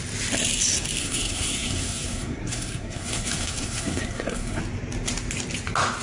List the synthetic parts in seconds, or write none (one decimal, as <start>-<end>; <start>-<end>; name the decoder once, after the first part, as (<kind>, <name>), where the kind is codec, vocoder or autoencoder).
1.0-4.6 (codec, SNAC)